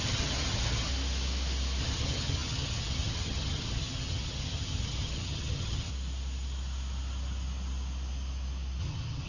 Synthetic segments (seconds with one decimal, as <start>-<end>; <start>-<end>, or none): 0.0-0.9; 1.8-5.9; 8.8-9.3